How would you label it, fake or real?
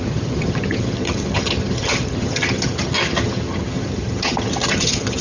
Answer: fake